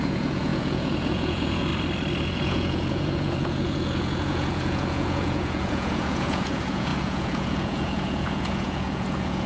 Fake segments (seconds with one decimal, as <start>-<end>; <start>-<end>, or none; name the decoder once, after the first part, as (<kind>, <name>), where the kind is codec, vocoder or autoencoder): 0.0-1.7 (vocoder, Vocos); 2.2-9.5